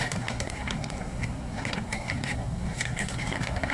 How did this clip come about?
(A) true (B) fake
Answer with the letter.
B